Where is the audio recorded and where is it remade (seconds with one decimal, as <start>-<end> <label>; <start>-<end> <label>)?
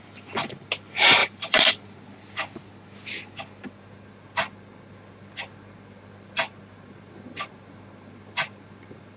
0.0-1.2 recorded; 1.2-1.7 remade; 1.7-9.2 recorded